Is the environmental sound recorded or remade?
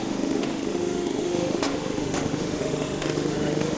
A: remade